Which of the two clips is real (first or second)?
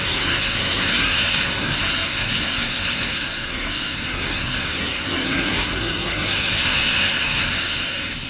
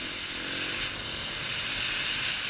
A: second